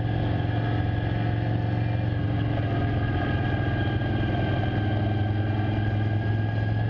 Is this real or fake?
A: real